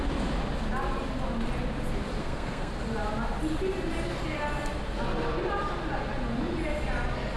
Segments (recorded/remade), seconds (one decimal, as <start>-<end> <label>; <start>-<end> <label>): 0.0-2.2 recorded; 2.2-2.7 remade; 2.7-7.4 recorded